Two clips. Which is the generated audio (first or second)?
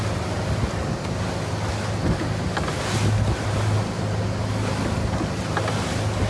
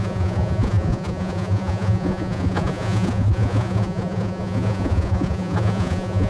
second